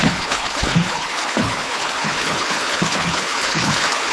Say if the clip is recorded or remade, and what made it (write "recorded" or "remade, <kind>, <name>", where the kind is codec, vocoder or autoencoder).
remade, codec, HILCodec